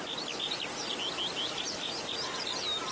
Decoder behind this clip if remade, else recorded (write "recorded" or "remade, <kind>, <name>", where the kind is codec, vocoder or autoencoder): recorded